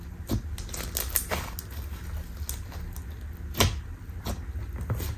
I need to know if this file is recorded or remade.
recorded